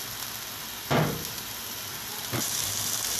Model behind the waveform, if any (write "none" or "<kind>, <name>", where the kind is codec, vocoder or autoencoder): none